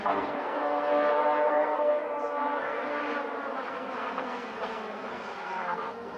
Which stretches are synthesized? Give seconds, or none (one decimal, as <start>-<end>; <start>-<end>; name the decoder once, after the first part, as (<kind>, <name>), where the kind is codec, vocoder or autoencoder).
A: 0.0-3.0 (codec, SNAC); 3.7-6.2